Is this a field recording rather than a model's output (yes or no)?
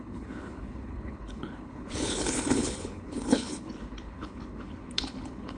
no